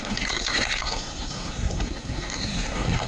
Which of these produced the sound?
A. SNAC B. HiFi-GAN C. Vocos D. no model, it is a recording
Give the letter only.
A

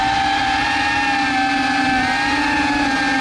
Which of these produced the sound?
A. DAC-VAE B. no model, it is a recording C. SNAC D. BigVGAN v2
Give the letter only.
B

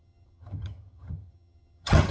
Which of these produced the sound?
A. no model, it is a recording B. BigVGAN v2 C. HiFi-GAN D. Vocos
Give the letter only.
C